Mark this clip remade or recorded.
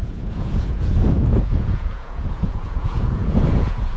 remade